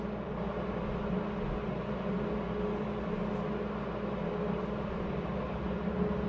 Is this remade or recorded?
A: recorded